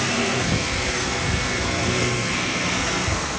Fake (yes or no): yes